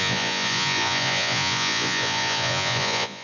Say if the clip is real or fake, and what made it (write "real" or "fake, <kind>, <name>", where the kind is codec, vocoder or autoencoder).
fake, vocoder, Vocos